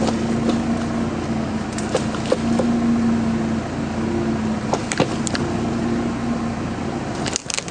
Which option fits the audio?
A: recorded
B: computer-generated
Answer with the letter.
A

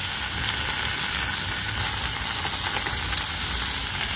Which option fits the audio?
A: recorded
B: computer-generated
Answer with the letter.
A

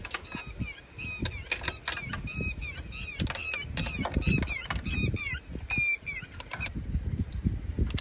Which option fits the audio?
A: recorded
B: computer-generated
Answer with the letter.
A